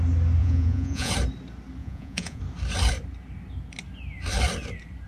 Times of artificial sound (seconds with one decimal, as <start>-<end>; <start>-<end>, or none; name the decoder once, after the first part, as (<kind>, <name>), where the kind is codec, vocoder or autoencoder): 0.4-1.1 (vocoder, Vocos); 1.8-2.4